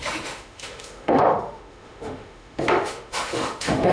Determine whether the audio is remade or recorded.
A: remade